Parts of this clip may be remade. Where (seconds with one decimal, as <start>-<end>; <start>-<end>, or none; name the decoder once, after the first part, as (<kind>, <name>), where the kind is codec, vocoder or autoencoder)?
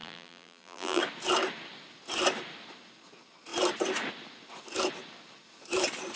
0.0-1.0 (vocoder, BigVGAN v2)